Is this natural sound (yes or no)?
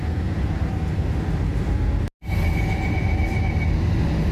yes